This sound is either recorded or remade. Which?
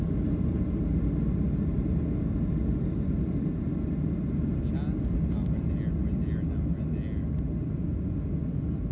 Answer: recorded